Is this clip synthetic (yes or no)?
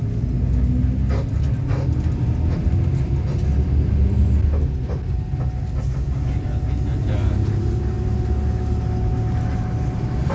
no